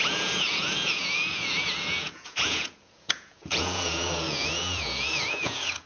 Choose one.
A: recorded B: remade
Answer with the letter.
B